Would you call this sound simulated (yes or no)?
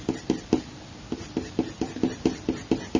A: no